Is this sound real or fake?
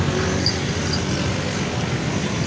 real